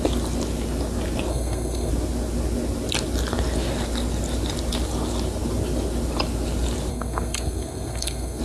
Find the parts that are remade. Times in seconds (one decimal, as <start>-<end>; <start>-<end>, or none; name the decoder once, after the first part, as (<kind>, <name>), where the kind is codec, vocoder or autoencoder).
1.3-1.9 (codec, SNAC); 6.9-8.4

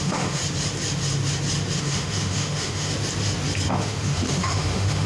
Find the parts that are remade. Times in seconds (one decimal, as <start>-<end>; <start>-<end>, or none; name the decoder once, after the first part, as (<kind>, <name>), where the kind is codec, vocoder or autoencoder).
0.0-0.4 (autoencoder, DAC-VAE); 1.8-2.9; 3.7-5.1

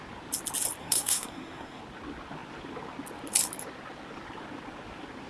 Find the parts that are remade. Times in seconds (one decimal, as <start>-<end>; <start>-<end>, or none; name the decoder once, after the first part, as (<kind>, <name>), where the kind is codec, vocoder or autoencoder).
0.8-1.8 (codec, SNAC)

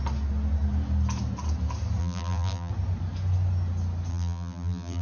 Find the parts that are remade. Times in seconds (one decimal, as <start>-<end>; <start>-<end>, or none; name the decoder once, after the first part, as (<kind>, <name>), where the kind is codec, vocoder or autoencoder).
2.0-2.7 (vocoder, BigVGAN v2); 4.1-5.0

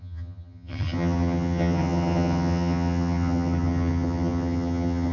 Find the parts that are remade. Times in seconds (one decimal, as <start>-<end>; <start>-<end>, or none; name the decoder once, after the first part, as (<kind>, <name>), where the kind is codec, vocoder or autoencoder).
0.0-5.1 (vocoder, HiFi-GAN)

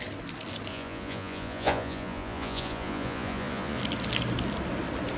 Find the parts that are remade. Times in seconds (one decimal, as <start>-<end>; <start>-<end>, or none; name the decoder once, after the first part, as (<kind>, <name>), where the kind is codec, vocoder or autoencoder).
0.7-3.8 (vocoder, Vocos)

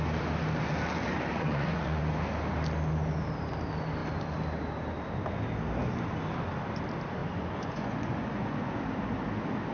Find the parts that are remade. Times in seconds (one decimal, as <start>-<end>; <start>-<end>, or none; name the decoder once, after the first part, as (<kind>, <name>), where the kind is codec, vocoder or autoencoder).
1.1-2.0 (vocoder, Vocos); 7.2-8.8